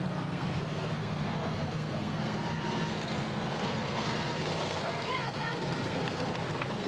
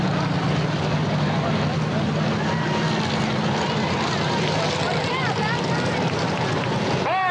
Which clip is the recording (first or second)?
second